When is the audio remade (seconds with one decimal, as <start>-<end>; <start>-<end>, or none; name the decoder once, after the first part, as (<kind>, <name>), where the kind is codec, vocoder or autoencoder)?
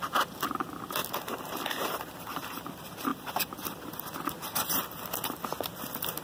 1.0-2.7 (vocoder, BigVGAN v2); 3.1-4.0